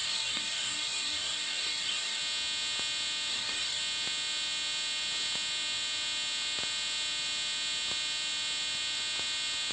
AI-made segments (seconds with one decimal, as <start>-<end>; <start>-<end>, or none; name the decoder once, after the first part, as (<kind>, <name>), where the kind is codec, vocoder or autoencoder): 0.0-2.2 (codec, DAC); 3.3-3.8